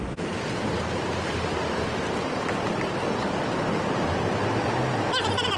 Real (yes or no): yes